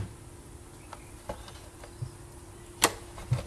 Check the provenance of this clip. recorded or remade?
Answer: recorded